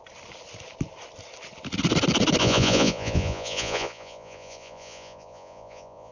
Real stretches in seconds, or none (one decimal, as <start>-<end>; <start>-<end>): 0.0-2.4